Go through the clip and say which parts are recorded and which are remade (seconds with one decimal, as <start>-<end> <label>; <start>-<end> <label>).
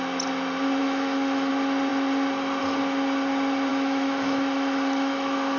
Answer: 0.0-0.8 recorded; 0.8-1.5 remade; 1.5-3.7 recorded; 3.7-5.6 remade